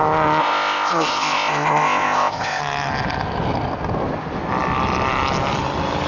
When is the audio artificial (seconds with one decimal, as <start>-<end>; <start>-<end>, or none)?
0.4-2.6